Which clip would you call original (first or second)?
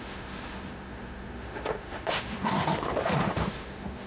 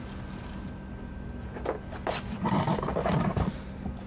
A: second